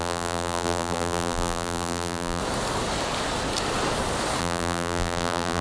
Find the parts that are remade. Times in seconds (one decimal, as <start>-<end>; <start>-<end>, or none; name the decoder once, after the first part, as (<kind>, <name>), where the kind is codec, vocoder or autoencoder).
0.0-2.4 (vocoder, BigVGAN v2); 4.4-5.6